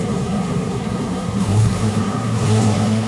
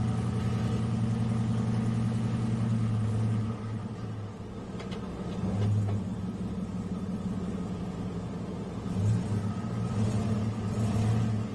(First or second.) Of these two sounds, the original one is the second